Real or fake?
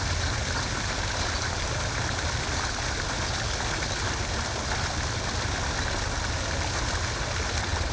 real